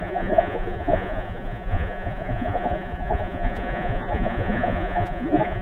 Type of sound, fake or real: fake